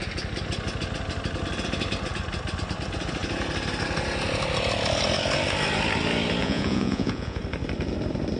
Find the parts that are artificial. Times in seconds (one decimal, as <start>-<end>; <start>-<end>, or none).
6.4-7.4